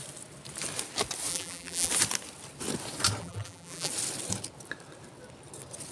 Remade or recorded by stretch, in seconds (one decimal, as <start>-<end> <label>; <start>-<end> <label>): 0.0-1.3 recorded; 1.3-1.9 remade; 1.9-3.2 recorded; 3.2-3.9 remade; 3.9-5.9 recorded